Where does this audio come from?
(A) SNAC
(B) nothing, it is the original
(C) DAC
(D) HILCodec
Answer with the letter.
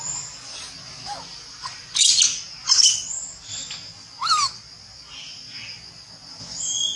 B